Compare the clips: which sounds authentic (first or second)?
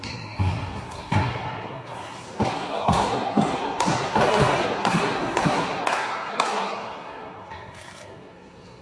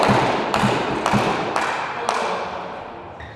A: second